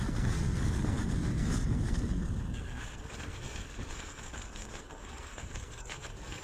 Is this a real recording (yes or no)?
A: no